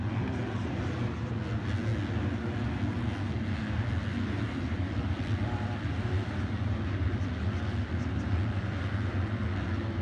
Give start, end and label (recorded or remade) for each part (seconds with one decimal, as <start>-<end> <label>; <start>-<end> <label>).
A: 0.0-4.1 recorded; 4.1-9.3 remade; 9.3-10.0 recorded